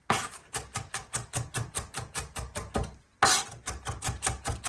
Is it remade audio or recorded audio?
recorded